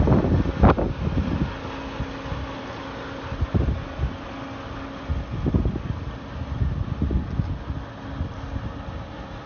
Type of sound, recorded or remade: recorded